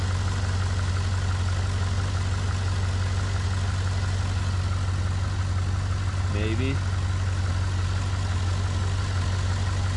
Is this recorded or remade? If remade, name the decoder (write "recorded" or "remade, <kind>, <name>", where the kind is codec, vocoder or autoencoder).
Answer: recorded